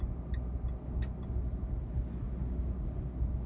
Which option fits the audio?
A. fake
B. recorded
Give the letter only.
B